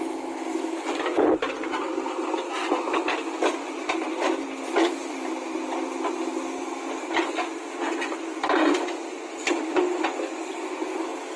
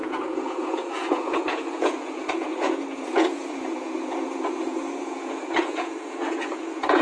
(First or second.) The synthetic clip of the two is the second